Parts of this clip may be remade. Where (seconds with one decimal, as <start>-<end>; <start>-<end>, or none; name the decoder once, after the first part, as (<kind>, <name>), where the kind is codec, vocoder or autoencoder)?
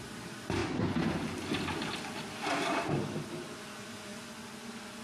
none